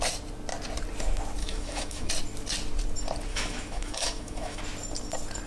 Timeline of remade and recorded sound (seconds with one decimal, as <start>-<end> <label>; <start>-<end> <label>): 0.0-1.4 recorded; 1.4-2.1 remade; 2.1-3.3 recorded; 3.3-4.6 remade; 4.6-5.5 recorded